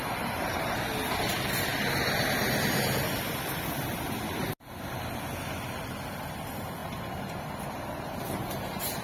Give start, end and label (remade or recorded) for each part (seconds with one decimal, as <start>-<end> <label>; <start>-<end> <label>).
0.0-1.7 remade; 1.7-6.1 recorded; 6.1-9.0 remade